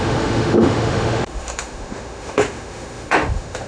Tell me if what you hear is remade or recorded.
remade